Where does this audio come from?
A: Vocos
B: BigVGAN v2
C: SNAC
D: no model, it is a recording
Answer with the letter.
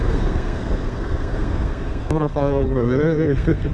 C